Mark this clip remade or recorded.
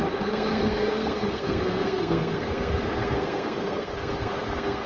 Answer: remade